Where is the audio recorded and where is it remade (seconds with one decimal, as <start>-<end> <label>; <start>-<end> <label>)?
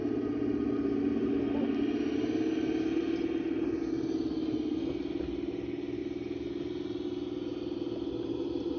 0.0-8.8 recorded